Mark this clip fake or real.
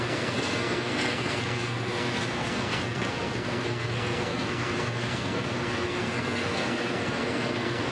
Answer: fake